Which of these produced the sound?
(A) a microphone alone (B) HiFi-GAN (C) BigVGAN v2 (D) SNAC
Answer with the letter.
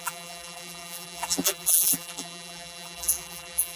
C